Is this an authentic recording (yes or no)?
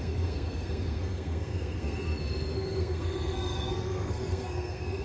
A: no